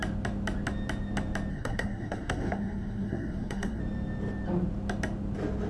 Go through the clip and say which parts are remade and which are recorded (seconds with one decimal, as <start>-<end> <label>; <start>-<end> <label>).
0.0-1.5 recorded; 1.5-3.8 remade; 3.8-5.7 recorded